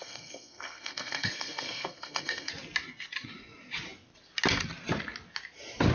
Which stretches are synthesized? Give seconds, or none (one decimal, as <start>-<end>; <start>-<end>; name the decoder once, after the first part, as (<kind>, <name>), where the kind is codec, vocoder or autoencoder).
0.0-2.5 (codec, SNAC)